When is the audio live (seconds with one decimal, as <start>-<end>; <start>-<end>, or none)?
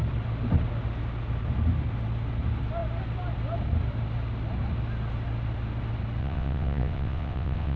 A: 0.0-6.2